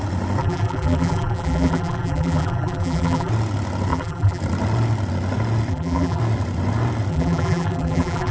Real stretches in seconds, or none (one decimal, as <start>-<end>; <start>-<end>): 0.0-0.4; 3.3-3.9; 4.4-5.7; 6.2-7.1